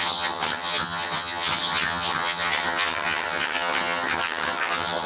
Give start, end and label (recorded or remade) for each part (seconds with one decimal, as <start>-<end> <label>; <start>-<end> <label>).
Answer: 0.0-5.1 remade